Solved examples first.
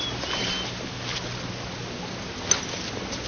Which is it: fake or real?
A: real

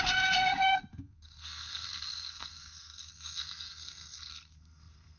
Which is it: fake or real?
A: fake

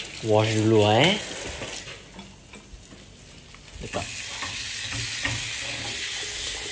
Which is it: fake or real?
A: real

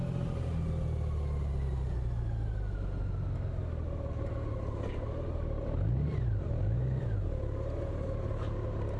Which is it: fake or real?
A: real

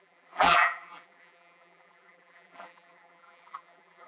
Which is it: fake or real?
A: fake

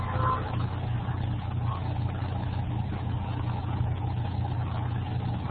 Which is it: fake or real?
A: real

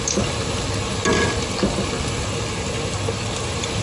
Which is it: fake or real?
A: real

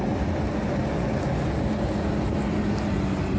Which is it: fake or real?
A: real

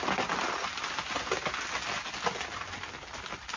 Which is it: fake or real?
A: real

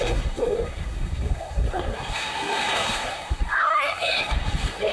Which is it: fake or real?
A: fake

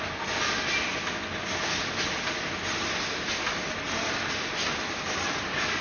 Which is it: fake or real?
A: real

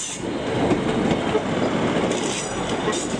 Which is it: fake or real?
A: real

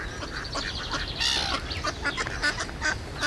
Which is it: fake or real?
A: real